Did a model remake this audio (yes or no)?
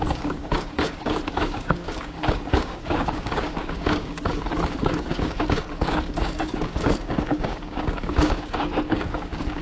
yes